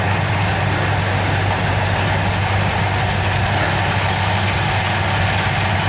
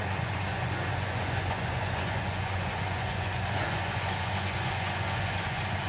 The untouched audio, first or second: first